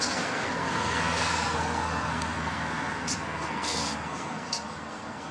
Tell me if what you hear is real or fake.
fake